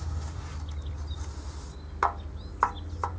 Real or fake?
real